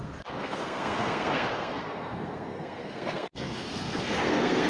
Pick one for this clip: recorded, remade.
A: remade